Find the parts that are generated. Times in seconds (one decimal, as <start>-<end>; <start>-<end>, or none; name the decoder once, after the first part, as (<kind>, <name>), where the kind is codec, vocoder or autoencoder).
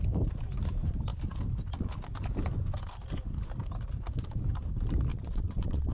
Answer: 5.1-5.9 (vocoder, WaveNeXt)